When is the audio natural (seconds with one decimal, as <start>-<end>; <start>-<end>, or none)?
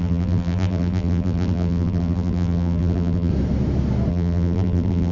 3.3-4.1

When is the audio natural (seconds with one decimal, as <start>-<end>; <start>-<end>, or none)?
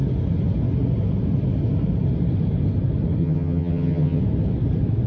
0.0-3.2; 4.2-5.1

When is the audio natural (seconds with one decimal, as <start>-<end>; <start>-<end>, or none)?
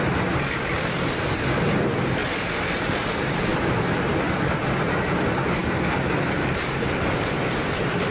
5.6-7.0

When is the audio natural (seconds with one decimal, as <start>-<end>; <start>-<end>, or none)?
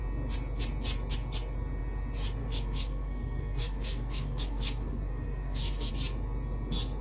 0.0-2.4; 5.9-7.0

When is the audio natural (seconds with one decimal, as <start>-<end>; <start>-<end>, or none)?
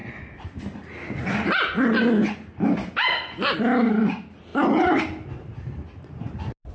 0.0-6.7